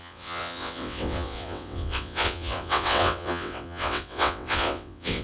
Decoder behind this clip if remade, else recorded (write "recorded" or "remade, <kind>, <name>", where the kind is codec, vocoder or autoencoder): remade, vocoder, WaveNeXt